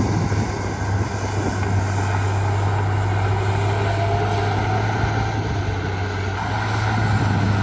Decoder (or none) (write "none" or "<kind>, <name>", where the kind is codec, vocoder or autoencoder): none